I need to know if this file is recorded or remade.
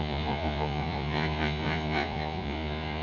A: remade